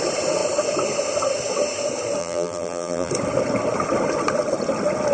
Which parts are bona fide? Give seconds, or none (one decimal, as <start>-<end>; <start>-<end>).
0.0-2.2; 3.1-5.1